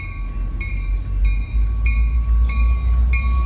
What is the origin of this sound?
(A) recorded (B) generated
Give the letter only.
A